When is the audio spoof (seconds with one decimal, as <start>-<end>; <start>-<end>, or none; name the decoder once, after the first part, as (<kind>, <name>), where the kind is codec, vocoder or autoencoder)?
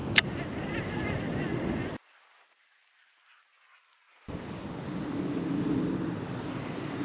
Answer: none